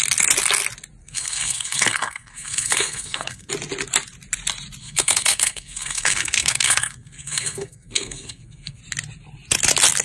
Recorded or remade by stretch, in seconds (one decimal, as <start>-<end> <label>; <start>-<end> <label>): 0.0-1.0 recorded; 1.0-3.5 remade; 3.5-4.8 recorded; 4.8-8.8 remade; 8.8-10.0 recorded